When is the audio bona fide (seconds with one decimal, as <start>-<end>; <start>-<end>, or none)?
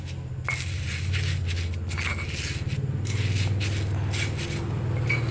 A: 0.0-5.3